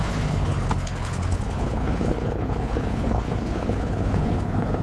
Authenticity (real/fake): fake